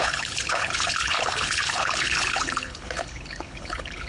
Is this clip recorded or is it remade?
remade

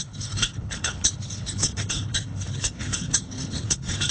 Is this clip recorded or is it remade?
remade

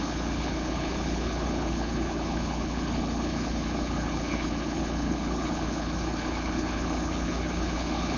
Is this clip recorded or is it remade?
remade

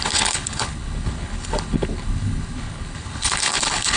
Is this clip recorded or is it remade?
remade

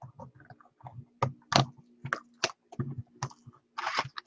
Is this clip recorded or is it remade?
recorded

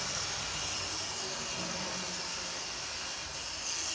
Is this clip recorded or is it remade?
recorded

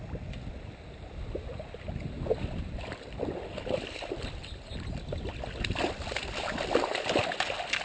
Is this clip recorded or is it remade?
recorded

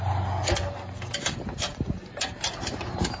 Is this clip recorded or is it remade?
recorded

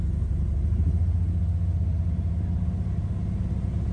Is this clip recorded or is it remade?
recorded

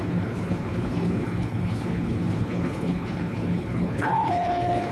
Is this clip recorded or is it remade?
remade